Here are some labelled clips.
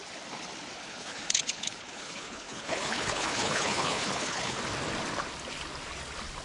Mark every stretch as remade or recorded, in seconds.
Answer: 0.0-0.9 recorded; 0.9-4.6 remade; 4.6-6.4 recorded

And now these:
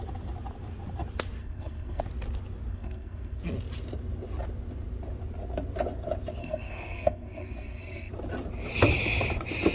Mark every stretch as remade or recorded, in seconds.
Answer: 0.0-1.4 recorded; 1.4-2.0 remade; 2.0-2.7 recorded; 2.7-3.4 remade; 3.4-6.4 recorded; 6.4-8.1 remade; 8.1-9.7 recorded

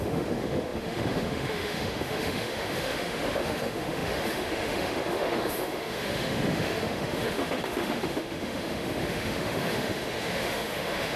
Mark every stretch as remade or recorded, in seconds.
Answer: 0.0-11.2 remade

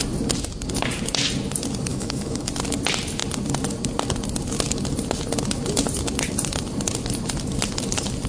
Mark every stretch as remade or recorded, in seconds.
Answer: 0.0-1.9 recorded; 1.9-2.5 remade; 2.5-8.3 recorded